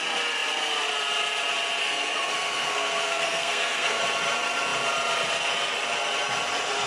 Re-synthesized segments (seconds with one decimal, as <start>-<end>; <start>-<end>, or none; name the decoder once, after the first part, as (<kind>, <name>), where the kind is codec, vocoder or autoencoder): 1.8-4.0 (codec, SNAC)